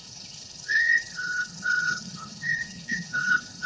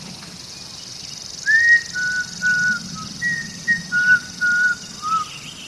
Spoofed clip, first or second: first